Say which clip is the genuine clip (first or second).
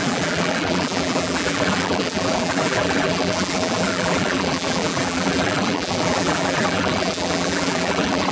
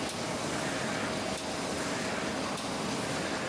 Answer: second